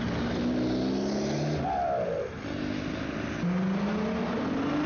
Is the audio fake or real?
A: real